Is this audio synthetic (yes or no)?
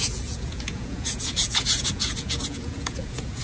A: yes